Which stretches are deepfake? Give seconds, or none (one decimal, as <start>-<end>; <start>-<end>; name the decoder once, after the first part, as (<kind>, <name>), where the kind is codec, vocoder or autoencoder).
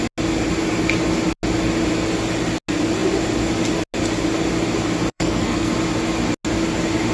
5.1-5.7 (codec, SNAC)